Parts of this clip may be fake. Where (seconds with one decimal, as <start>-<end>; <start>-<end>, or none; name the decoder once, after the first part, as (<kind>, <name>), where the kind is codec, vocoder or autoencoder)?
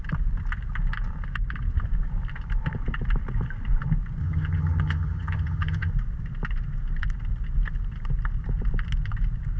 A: 4.2-5.9 (vocoder, HiFi-GAN)